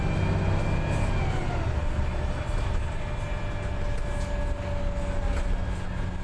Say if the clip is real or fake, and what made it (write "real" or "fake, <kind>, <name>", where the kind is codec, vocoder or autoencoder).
real